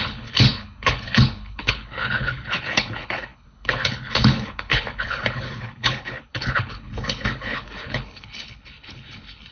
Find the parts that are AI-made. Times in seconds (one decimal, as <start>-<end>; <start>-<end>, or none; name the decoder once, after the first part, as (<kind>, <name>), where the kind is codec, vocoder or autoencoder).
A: 0.0-9.5 (codec, HILCodec)